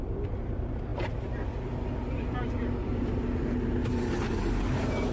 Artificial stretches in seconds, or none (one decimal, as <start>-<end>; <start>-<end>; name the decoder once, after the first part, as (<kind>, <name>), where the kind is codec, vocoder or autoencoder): none